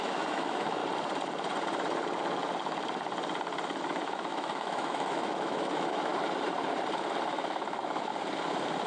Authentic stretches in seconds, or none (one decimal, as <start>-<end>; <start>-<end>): 0.8-3.8; 6.1-7.3; 8.1-8.9